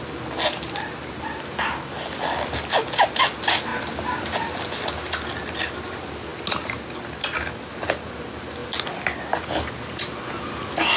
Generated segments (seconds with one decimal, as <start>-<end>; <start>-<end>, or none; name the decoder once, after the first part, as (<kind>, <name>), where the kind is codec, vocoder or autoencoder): none